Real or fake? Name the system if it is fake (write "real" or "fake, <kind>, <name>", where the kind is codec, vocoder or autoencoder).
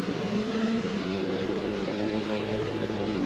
fake, codec, SNAC